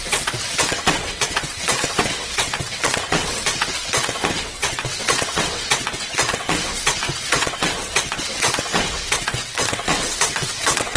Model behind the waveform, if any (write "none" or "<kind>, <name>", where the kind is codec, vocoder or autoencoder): vocoder, WaveNeXt